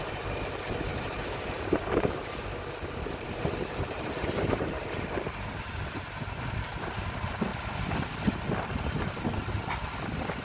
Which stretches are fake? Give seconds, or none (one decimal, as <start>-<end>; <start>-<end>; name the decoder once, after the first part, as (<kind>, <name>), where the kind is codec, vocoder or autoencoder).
0.9-4.8 (vocoder, BigVGAN v2)